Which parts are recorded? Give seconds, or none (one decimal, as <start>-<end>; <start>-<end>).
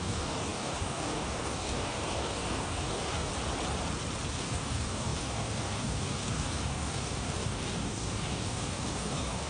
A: 3.3-4.3